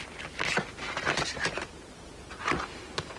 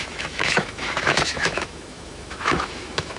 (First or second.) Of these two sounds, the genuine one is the first